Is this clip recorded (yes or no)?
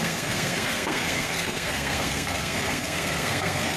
no